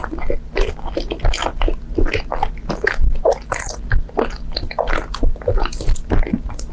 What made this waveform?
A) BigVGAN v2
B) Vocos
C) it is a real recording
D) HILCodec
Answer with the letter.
C